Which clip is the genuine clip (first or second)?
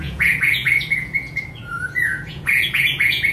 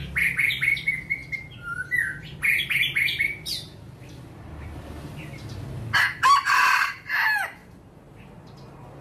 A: second